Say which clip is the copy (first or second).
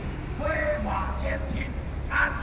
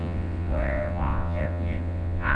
second